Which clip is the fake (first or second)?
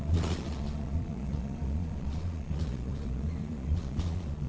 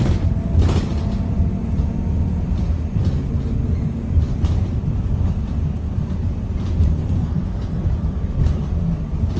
first